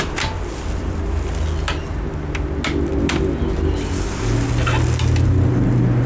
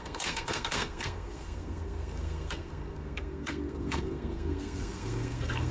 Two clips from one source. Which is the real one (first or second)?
first